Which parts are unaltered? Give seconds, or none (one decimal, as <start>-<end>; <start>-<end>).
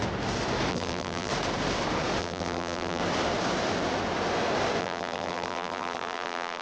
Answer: 0.0-0.7; 1.3-2.2; 3.0-4.8